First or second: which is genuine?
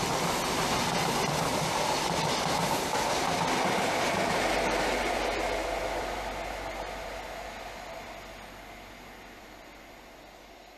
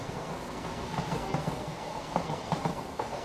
first